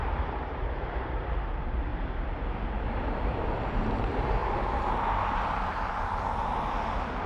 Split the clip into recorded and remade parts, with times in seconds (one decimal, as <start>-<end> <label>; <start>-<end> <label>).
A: 0.0-0.5 recorded; 0.5-1.9 remade; 1.9-3.1 recorded; 3.1-4.4 remade; 4.4-7.3 recorded